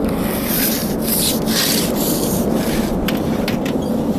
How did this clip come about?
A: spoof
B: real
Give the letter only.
B